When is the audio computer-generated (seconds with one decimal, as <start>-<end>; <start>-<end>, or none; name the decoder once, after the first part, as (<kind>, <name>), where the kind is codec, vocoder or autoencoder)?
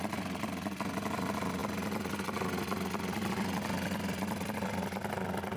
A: none